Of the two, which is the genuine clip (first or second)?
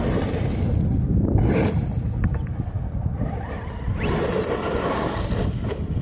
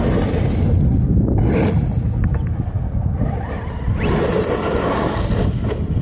second